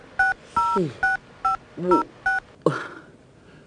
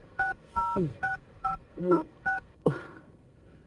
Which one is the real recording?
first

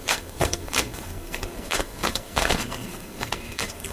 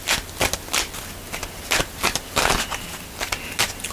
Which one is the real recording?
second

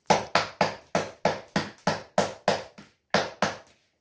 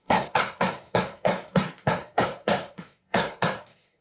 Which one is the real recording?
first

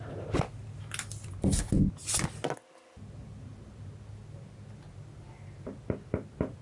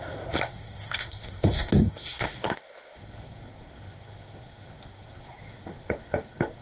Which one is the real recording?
first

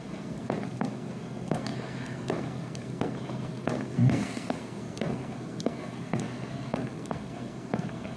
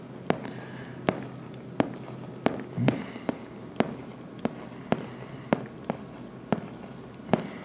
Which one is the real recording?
second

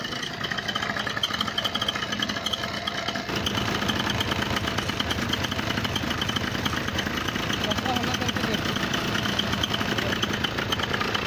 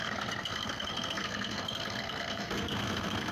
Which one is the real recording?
first